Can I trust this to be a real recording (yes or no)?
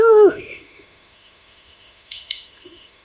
no